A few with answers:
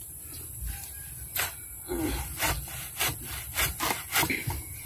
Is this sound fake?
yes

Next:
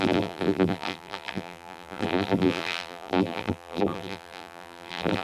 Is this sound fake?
yes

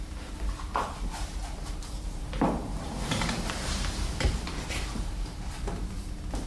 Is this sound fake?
yes